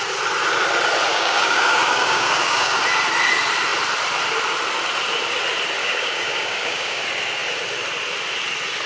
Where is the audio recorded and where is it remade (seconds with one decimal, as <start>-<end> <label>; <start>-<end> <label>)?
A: 0.0-1.1 recorded; 1.1-2.8 remade; 2.8-5.8 recorded; 5.8-7.0 remade; 7.0-8.9 recorded